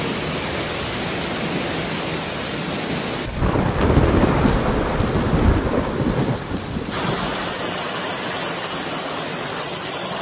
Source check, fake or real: real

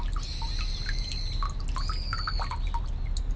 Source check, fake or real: real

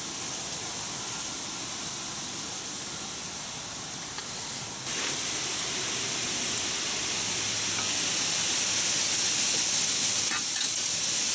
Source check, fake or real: real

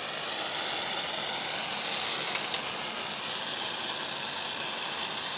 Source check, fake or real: real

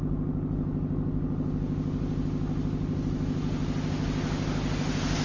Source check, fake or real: real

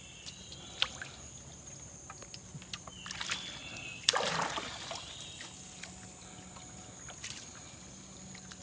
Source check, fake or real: real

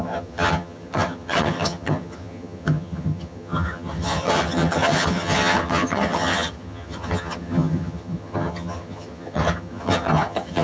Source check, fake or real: fake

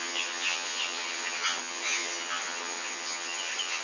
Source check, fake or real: fake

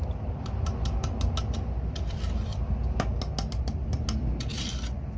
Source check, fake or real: real